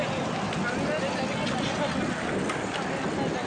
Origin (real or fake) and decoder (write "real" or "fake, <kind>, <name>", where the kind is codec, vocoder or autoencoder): real